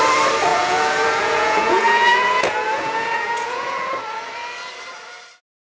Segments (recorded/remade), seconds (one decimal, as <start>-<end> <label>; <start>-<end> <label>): 0.0-0.5 recorded; 0.5-3.9 remade; 3.9-5.6 recorded